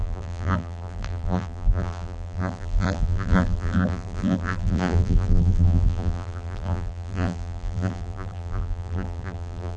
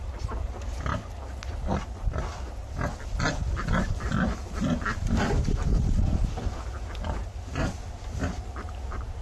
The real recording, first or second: second